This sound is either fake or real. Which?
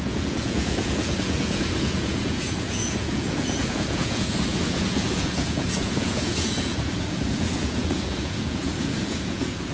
fake